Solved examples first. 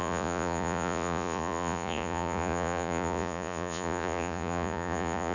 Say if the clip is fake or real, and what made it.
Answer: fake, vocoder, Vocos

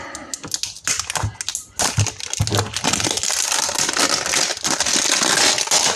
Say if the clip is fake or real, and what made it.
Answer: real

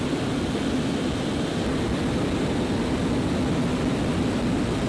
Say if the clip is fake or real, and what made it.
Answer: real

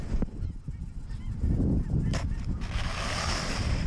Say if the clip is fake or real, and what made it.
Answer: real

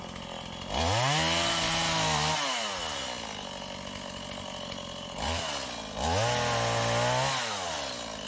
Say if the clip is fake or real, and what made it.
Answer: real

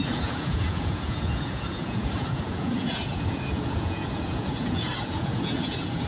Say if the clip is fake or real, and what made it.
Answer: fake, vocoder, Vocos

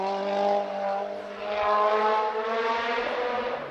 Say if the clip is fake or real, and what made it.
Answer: real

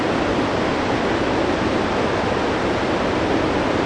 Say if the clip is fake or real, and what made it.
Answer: real